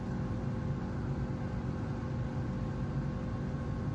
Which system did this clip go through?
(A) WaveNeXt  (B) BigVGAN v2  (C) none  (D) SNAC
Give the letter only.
C